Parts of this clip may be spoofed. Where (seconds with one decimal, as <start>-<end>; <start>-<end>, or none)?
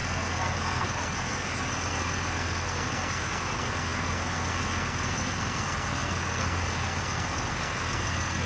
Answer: 0.0-8.5